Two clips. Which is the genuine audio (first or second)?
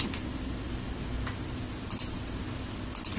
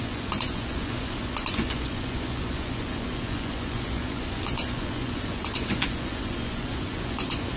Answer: first